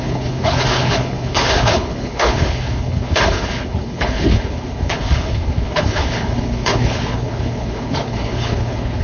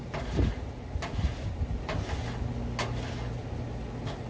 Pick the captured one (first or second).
second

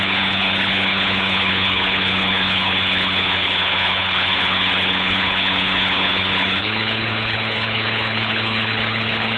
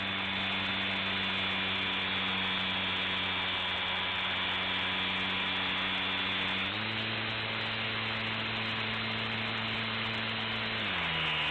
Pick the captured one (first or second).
second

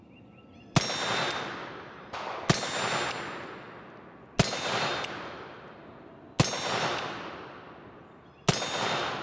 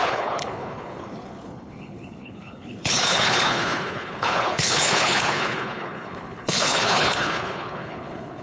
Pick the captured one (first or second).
first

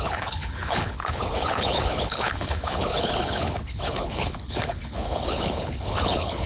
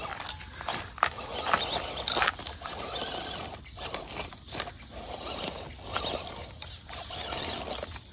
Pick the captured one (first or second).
second